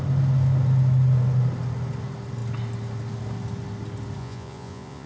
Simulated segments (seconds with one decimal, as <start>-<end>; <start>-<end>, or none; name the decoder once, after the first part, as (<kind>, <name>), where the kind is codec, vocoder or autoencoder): 4.2-5.1 (vocoder, Vocos)